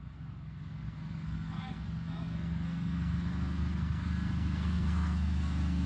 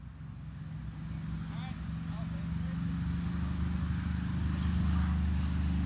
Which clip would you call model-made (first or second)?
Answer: first